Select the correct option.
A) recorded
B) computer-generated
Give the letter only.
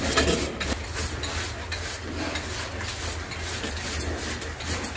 A